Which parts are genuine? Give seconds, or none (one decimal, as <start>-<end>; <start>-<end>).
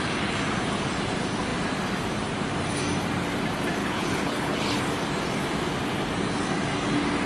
0.0-3.8; 4.8-7.3